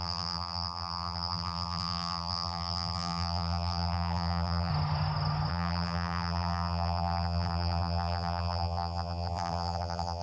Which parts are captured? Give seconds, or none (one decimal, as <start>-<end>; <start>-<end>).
4.7-5.5